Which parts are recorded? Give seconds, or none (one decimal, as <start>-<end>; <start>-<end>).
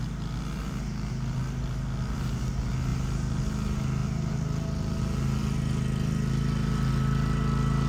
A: 0.0-7.9